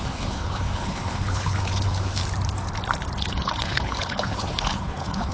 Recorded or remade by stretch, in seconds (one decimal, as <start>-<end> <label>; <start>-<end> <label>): 0.0-2.2 remade; 2.2-3.2 recorded; 3.2-5.3 remade